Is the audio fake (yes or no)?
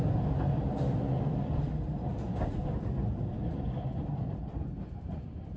no